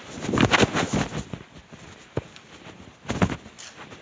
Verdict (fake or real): real